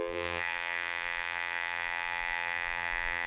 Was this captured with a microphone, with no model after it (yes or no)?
no